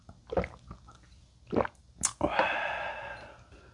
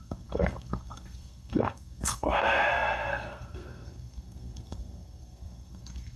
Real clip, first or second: first